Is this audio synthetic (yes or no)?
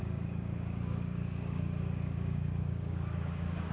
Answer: yes